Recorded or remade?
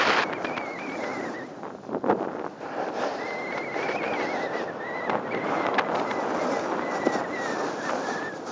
recorded